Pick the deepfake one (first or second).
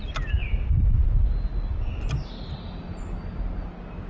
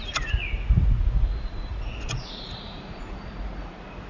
second